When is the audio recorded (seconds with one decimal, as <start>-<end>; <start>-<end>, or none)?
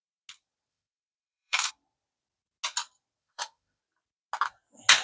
0.0-0.7; 1.7-3.2; 3.8-5.0